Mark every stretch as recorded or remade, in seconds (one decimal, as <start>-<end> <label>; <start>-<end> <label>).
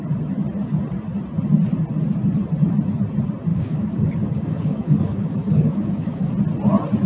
0.0-3.5 recorded; 3.5-6.3 remade; 6.3-7.1 recorded